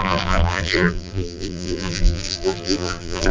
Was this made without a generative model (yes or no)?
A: no